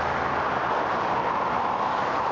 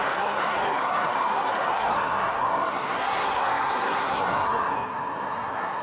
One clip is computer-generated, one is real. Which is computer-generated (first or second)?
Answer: second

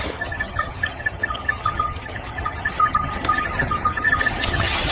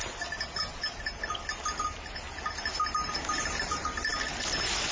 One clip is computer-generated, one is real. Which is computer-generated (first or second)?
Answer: first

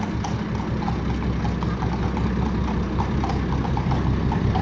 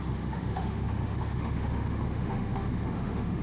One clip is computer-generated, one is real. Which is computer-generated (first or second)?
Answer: second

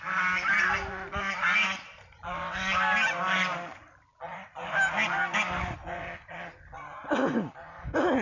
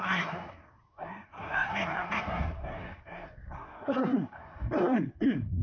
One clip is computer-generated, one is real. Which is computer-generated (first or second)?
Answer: second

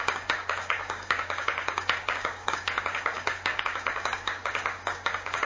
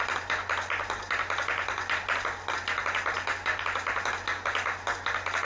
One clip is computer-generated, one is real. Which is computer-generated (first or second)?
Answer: first